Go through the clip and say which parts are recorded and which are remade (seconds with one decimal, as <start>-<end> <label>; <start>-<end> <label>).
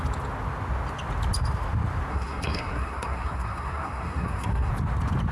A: 0.0-2.1 recorded; 2.1-4.7 remade; 4.7-5.3 recorded